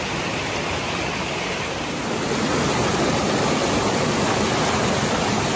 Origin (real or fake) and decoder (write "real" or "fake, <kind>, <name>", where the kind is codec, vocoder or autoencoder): fake, vocoder, BigVGAN v2